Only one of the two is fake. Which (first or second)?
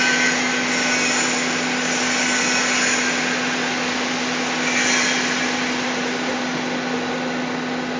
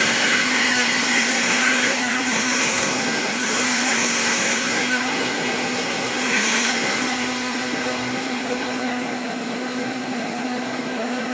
second